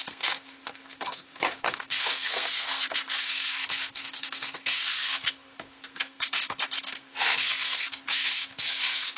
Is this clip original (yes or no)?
no